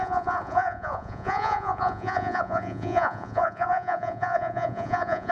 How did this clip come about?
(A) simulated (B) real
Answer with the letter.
A